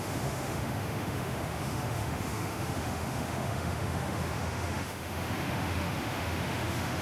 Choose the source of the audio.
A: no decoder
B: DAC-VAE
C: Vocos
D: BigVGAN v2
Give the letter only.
B